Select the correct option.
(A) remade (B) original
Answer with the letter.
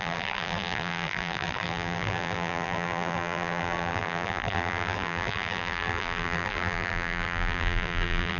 A